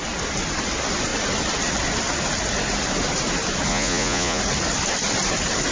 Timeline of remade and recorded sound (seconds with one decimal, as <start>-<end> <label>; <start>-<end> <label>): 0.0-3.7 recorded; 3.7-4.4 remade; 4.4-5.7 recorded

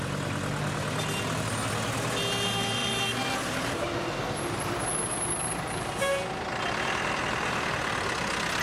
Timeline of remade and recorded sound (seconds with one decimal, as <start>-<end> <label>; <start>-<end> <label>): 0.0-2.8 recorded; 2.8-4.7 remade; 4.7-5.4 recorded; 5.4-5.9 remade; 5.9-8.6 recorded

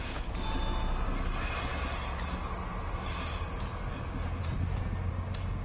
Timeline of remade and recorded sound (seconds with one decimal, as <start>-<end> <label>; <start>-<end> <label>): 0.0-5.6 recorded

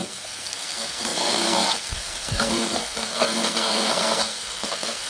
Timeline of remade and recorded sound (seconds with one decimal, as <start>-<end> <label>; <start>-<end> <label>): 0.0-5.1 remade

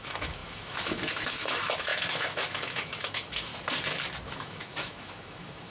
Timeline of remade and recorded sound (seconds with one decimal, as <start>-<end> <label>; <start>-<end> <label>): 0.0-3.5 remade; 3.5-4.3 recorded; 4.3-5.7 remade

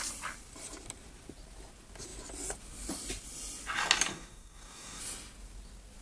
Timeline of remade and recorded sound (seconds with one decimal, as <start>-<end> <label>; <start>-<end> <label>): 0.0-4.1 recorded; 4.1-5.0 remade; 5.0-6.0 recorded